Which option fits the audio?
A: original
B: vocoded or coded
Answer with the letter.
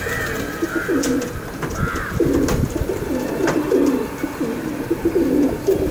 A